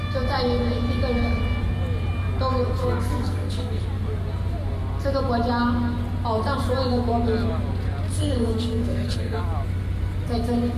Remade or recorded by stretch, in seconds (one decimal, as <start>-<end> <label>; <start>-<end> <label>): 0.0-2.8 recorded; 2.8-3.8 remade; 3.8-8.2 recorded; 8.2-9.4 remade; 9.4-10.8 recorded